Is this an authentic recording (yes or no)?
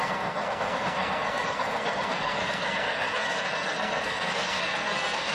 no